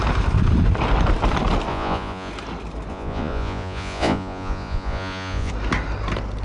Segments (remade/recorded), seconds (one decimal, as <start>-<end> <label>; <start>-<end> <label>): 0.0-1.7 recorded; 1.7-2.3 remade; 2.3-2.9 recorded; 2.9-5.5 remade; 5.5-6.4 recorded

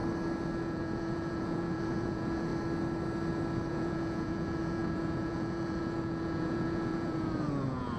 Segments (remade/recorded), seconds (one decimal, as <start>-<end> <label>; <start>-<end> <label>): 0.0-0.6 recorded; 0.6-2.5 remade; 2.5-3.7 recorded; 3.7-8.0 remade

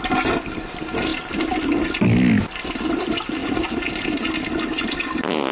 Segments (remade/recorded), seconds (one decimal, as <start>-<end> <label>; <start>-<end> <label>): 0.0-5.5 recorded